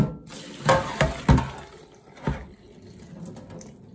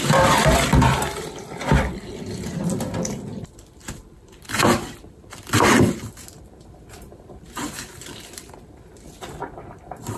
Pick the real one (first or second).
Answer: first